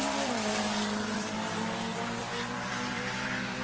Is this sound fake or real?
fake